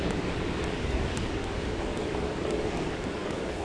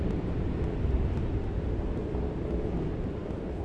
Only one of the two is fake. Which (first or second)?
first